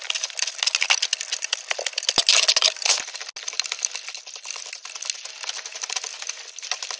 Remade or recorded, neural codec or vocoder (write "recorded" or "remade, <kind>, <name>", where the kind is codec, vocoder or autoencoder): recorded